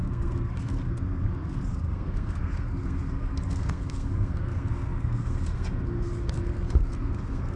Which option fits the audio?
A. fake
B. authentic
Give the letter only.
A